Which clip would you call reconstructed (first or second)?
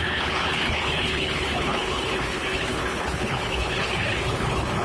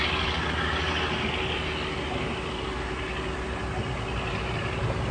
first